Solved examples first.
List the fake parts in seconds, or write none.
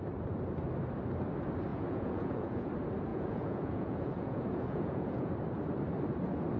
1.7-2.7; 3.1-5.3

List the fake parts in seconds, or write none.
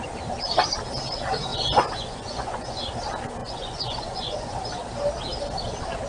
1.5-2.8; 3.4-4.5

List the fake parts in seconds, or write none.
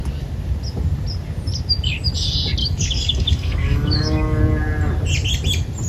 2.6-4.4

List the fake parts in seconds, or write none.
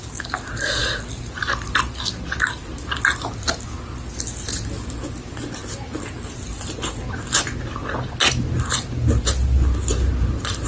none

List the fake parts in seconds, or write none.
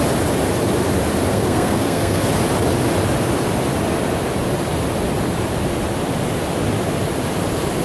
1.3-2.2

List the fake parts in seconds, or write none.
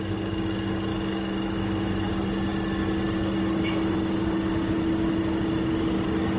0.9-2.1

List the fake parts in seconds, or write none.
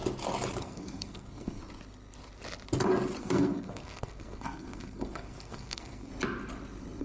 0.6-1.6; 3.2-6.1